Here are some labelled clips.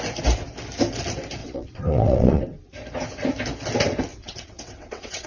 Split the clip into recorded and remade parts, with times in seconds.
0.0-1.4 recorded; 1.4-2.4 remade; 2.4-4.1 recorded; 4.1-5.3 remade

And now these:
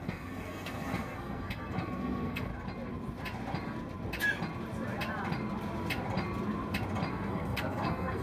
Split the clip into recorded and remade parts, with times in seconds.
0.0-2.5 remade; 2.5-7.1 recorded; 7.1-8.2 remade

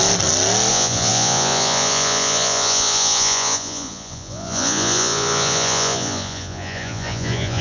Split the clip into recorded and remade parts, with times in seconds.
0.0-0.7 recorded; 0.7-7.6 remade

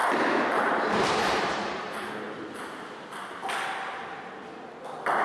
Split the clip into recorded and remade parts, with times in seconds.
0.0-2.1 remade; 2.1-5.2 recorded

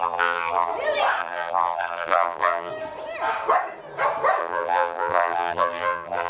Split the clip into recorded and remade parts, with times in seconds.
0.0-0.7 remade; 0.7-1.2 recorded; 1.2-2.7 remade; 2.7-4.4 recorded; 4.4-6.3 remade

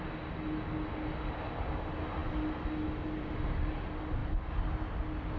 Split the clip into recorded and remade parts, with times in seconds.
0.0-5.4 recorded

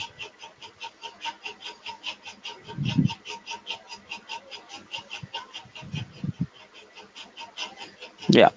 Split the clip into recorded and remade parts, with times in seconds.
0.0-8.6 recorded

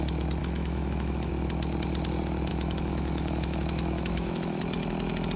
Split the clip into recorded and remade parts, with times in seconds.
0.0-0.4 recorded; 0.4-1.3 remade; 1.3-2.5 recorded; 2.5-4.6 remade; 4.6-5.4 recorded